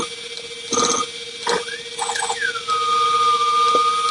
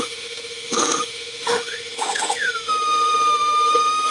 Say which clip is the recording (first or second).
first